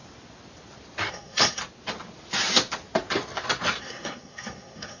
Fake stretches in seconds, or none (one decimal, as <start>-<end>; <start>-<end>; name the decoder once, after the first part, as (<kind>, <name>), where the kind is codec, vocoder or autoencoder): 1.1-1.6 (codec, SNAC); 3.8-5.0